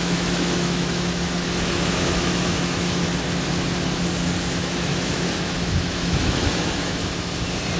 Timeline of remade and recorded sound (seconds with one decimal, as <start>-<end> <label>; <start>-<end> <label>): 0.0-3.1 remade; 3.1-4.5 recorded; 4.5-7.0 remade; 7.0-7.8 recorded